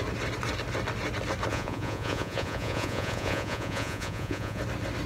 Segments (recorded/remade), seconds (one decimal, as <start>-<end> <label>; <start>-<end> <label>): 0.0-1.5 recorded; 1.5-4.6 remade; 4.6-5.1 recorded